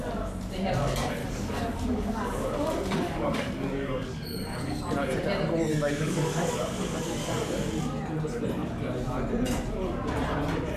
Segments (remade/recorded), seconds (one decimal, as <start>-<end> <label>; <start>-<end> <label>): 0.0-1.2 recorded; 1.2-4.8 remade; 4.8-5.7 recorded; 5.7-7.7 remade; 7.7-10.8 recorded